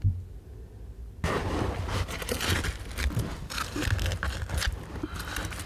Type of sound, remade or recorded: recorded